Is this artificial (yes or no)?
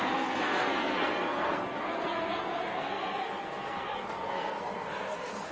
yes